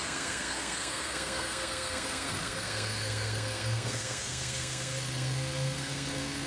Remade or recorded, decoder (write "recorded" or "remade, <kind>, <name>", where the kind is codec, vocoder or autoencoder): remade, codec, SNAC